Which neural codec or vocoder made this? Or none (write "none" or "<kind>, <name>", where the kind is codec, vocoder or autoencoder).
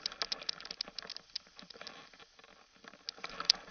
none